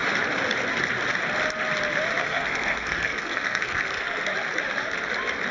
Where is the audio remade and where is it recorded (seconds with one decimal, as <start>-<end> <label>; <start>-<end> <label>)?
0.0-2.2 recorded; 2.2-4.3 remade; 4.3-5.5 recorded